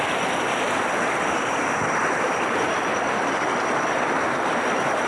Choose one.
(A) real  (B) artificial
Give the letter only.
A